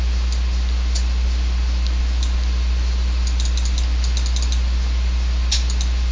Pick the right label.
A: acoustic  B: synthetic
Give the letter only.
A